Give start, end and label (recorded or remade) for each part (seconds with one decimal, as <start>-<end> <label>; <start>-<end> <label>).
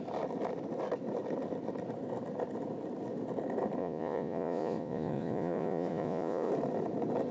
0.0-3.8 recorded; 3.8-6.5 remade; 6.5-7.3 recorded